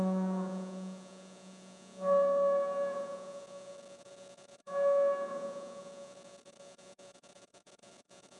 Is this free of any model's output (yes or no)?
no